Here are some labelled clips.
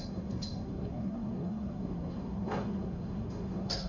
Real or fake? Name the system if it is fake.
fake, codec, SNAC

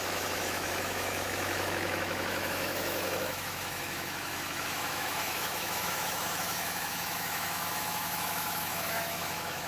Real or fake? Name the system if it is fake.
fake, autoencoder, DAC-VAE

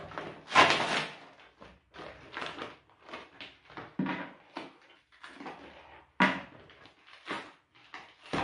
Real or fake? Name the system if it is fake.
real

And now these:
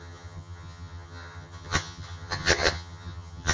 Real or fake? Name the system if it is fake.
fake, vocoder, HiFi-GAN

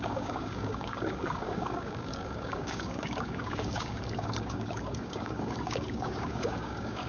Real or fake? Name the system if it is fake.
fake, codec, DAC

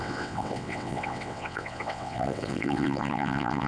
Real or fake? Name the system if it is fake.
fake, vocoder, WaveNeXt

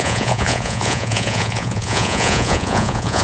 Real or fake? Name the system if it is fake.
fake, vocoder, Vocos